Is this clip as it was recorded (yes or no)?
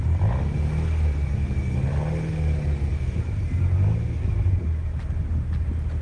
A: yes